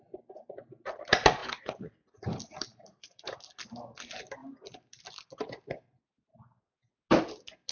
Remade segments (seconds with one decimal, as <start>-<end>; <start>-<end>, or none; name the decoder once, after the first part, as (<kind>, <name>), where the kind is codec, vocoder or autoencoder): 2.7-3.4 (vocoder, BigVGAN v2); 4.4-5.0